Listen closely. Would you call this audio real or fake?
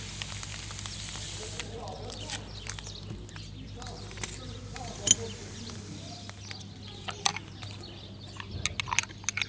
real